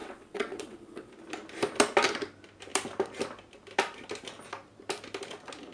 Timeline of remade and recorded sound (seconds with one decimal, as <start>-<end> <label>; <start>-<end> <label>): 0.0-1.1 remade; 1.1-5.7 recorded